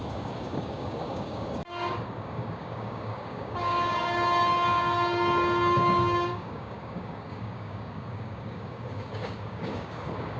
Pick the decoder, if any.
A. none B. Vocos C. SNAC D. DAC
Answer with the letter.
D